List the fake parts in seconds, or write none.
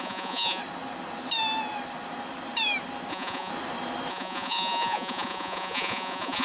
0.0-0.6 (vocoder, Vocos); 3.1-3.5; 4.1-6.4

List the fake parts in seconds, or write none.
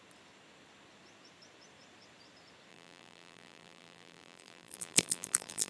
2.7-5.7 (vocoder, BigVGAN v2)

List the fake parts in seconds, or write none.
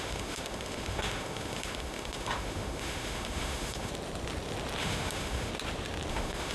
0.0-3.9 (autoencoder, DAC-VAE); 4.8-5.5; 6.1-6.5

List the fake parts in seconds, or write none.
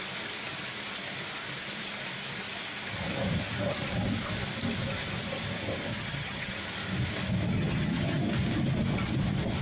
5.9-6.5 (vocoder, HiFi-GAN); 7.6-8.2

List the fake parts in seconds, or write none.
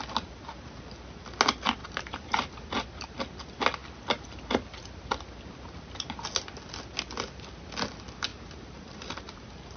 1.8-2.5 (vocoder, BigVGAN v2); 8.3-9.8